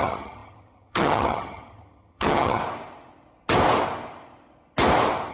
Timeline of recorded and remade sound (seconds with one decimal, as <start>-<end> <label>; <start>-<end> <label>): 0.0-2.6 remade; 2.6-5.3 recorded